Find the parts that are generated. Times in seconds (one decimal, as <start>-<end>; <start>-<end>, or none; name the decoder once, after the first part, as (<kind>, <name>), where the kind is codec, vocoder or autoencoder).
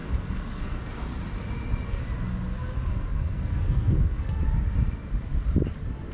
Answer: 0.0-1.0 (codec, SNAC); 2.9-4.4